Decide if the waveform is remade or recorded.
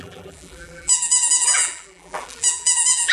remade